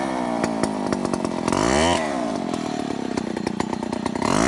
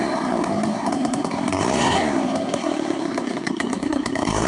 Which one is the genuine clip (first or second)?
first